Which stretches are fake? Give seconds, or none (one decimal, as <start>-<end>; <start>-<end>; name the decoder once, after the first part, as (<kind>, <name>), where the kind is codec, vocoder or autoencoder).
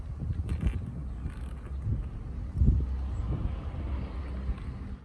none